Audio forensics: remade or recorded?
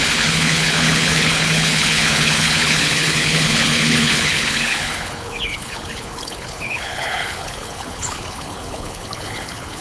remade